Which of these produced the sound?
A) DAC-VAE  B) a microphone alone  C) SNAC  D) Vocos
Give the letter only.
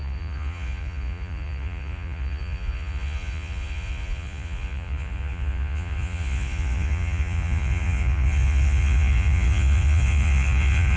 D